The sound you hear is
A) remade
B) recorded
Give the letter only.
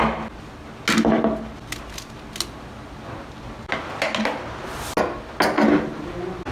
B